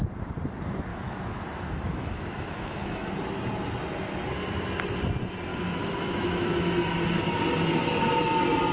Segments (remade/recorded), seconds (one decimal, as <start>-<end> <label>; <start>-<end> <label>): 0.0-0.9 recorded; 0.9-3.1 remade; 3.1-5.5 recorded; 5.5-6.5 remade; 6.5-8.7 recorded